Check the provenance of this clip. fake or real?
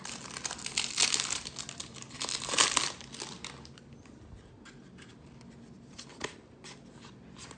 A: real